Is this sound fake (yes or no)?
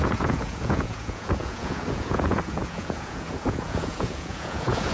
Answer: yes